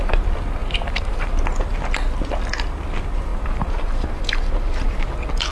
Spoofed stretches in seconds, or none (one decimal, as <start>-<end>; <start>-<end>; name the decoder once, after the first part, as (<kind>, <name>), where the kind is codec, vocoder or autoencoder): 0.6-1.3 (vocoder, BigVGAN v2); 3.3-5.1